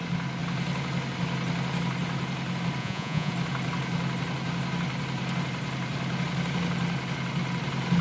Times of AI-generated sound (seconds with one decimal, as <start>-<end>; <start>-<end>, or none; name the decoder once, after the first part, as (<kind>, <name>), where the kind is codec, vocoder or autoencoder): 2.8-3.3 (vocoder, Vocos)